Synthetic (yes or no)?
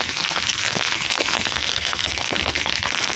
yes